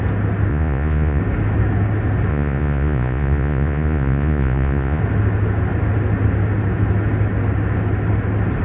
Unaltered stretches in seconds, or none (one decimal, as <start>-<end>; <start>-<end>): 0.0-0.5; 1.2-2.3; 5.0-8.6